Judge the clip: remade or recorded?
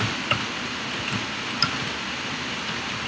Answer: recorded